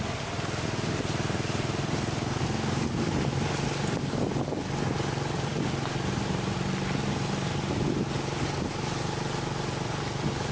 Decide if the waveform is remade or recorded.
recorded